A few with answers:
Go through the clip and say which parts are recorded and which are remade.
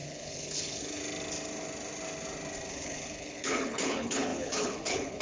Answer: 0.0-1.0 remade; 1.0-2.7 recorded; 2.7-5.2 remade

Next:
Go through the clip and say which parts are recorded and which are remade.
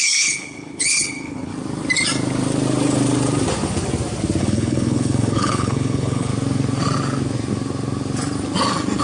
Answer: 0.0-1.5 remade; 1.5-4.4 recorded; 4.4-6.3 remade; 6.3-9.0 recorded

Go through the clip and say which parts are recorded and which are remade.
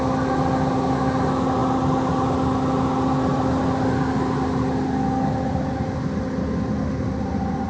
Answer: 0.0-7.7 recorded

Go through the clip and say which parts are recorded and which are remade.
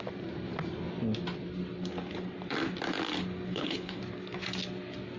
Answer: 0.0-3.5 recorded; 3.5-4.0 remade; 4.0-5.2 recorded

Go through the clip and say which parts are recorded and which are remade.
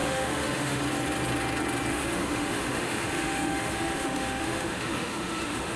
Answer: 0.0-0.8 remade; 0.8-1.9 recorded; 1.9-5.8 remade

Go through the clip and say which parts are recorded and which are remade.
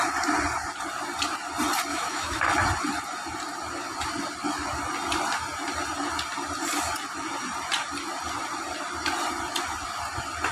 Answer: 0.0-1.9 recorded; 1.9-2.4 remade; 2.4-10.5 recorded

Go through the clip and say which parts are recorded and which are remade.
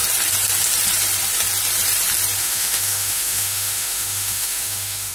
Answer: 0.0-2.4 recorded; 2.4-5.1 remade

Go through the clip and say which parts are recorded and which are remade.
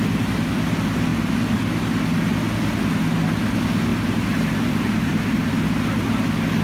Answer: 0.0-3.9 recorded; 3.9-5.5 remade; 5.5-6.6 recorded